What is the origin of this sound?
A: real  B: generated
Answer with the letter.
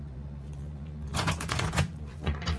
B